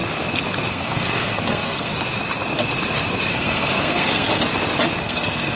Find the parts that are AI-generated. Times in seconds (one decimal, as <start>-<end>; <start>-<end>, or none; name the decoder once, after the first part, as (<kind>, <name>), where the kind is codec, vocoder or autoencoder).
0.7-1.9 (codec, SNAC); 3.3-4.4; 5.0-5.6